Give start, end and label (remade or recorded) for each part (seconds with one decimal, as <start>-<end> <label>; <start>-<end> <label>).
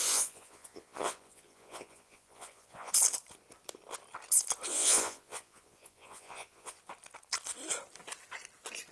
0.0-2.9 remade; 2.9-4.7 recorded; 4.7-6.8 remade; 6.8-8.9 recorded